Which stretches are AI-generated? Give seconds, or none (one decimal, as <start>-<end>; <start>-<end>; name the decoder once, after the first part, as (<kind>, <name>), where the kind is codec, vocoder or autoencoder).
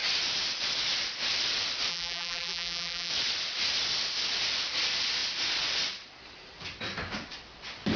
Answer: 1.9-3.1 (vocoder, BigVGAN v2)